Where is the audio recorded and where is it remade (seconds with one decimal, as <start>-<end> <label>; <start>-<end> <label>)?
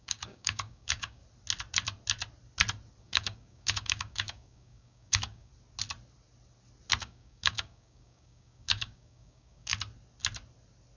0.0-1.2 remade; 1.2-3.0 recorded; 3.0-5.5 remade; 5.5-7.0 recorded; 7.0-9.7 remade; 9.7-11.0 recorded